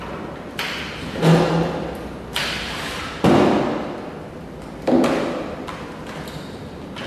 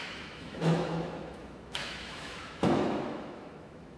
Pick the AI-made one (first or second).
second